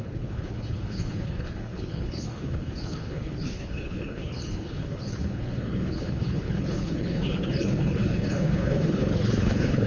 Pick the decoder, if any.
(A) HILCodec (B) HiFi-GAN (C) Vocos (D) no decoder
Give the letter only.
A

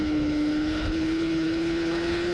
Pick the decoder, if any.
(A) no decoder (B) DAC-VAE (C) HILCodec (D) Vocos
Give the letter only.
C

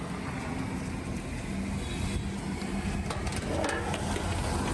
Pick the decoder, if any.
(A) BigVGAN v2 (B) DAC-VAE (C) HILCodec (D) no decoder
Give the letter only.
D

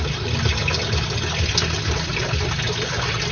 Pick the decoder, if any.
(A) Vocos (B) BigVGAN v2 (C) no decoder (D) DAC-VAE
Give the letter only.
C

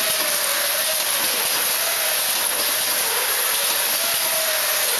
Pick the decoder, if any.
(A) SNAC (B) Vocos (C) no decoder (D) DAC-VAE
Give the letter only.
C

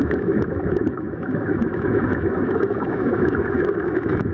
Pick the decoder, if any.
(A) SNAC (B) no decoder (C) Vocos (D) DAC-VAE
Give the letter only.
D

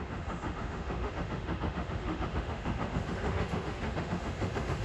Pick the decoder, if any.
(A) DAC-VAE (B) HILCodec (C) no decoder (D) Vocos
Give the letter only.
A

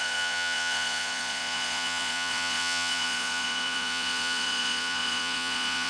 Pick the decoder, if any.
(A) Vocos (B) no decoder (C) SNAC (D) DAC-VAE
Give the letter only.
A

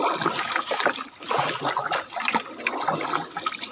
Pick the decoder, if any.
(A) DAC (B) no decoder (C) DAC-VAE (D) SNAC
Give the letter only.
B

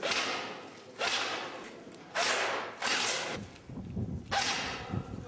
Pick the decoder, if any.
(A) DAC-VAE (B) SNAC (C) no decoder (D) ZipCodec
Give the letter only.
C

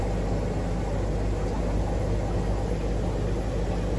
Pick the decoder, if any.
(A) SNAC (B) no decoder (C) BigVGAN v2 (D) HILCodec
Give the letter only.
B